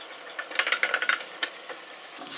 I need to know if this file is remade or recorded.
remade